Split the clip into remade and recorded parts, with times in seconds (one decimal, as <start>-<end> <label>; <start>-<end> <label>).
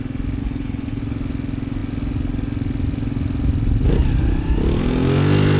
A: 0.0-0.4 recorded; 0.4-1.0 remade; 1.0-5.6 recorded